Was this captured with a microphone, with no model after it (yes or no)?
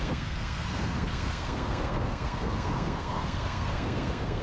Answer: no